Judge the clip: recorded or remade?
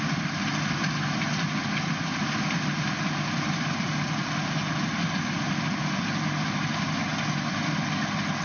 recorded